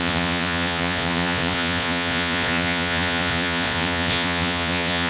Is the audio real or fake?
fake